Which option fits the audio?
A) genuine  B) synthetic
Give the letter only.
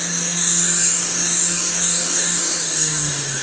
B